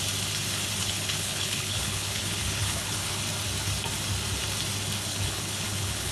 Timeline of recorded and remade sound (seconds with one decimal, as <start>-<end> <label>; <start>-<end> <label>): 0.0-0.8 recorded; 0.8-3.2 remade; 3.2-5.1 recorded; 5.1-6.1 remade